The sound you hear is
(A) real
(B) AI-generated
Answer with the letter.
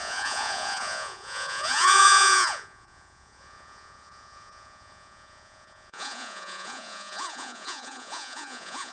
B